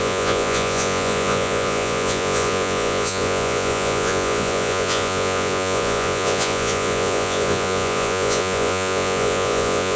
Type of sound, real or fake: fake